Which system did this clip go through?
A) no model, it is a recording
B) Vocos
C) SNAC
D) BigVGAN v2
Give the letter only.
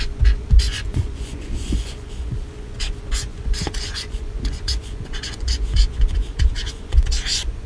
B